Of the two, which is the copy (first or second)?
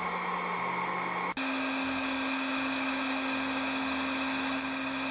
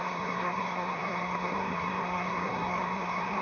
second